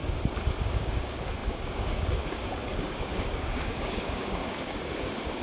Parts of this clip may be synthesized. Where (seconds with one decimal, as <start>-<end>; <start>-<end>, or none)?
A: 0.7-5.4